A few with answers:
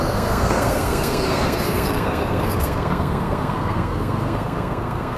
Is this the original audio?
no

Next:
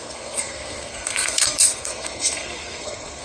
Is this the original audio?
no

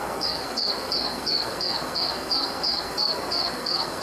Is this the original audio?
no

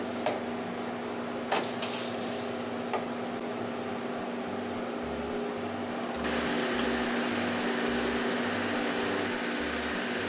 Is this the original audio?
yes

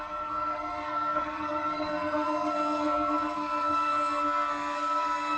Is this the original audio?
no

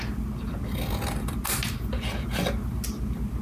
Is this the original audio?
yes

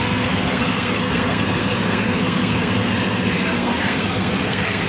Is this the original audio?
no